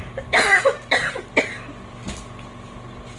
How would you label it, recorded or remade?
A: recorded